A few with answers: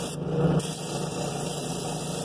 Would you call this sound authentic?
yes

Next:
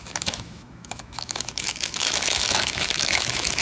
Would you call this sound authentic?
no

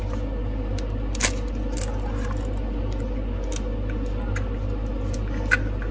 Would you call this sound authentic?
yes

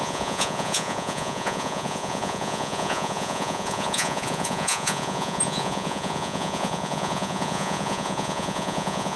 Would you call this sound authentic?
no